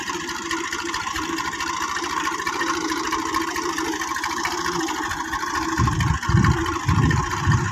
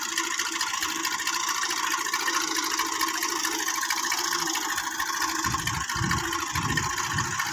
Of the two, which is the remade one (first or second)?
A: first